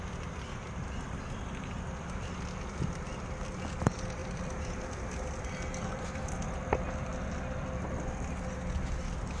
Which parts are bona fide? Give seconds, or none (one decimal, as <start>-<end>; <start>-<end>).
0.0-4.2; 6.3-9.4